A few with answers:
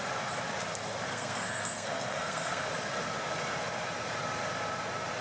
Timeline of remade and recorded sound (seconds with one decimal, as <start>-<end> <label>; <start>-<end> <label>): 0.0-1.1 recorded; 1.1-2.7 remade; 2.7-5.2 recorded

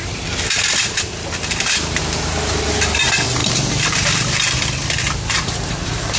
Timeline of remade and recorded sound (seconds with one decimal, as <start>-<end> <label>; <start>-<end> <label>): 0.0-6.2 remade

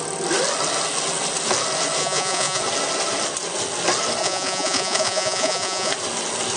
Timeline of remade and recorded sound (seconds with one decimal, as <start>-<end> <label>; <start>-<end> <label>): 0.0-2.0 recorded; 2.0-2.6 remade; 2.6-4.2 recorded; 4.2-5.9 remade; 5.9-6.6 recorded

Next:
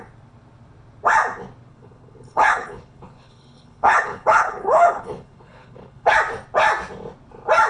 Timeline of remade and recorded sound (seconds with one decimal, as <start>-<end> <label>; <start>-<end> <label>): 0.0-1.7 recorded; 1.7-6.1 remade; 6.1-7.7 recorded

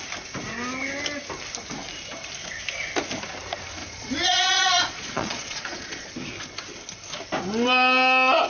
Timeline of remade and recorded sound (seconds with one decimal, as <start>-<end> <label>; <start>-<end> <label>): 0.0-3.8 recorded; 3.8-6.1 remade; 6.1-8.5 recorded

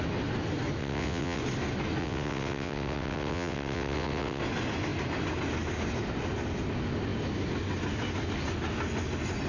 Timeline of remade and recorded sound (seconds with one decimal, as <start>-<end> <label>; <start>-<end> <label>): 0.0-0.8 recorded; 0.8-1.4 remade; 1.4-2.0 recorded; 2.0-4.4 remade; 4.4-9.5 recorded